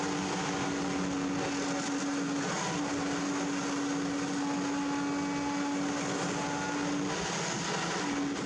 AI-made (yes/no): no